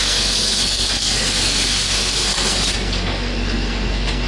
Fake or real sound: fake